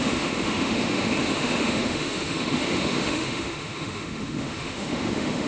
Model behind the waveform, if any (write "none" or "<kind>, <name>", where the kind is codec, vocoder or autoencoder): autoencoder, DAC-VAE